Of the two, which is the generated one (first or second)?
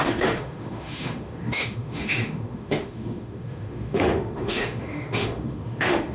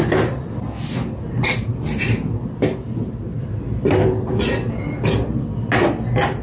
first